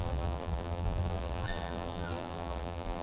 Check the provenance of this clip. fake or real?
fake